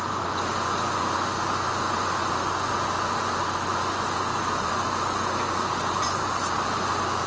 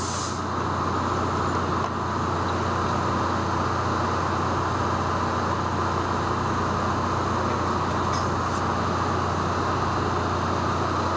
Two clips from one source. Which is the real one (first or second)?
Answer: second